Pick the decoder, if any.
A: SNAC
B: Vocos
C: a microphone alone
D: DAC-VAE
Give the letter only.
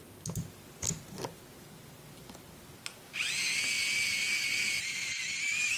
C